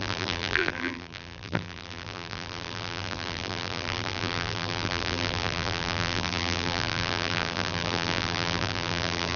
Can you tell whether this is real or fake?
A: fake